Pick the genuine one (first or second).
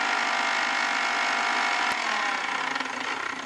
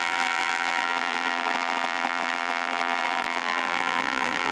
first